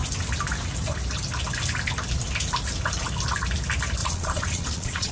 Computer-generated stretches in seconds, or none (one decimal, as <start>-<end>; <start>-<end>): 4.0-5.1